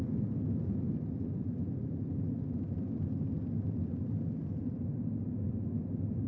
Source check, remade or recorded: recorded